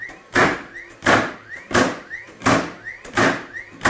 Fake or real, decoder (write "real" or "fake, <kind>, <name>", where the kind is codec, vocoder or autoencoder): fake, vocoder, BigVGAN v2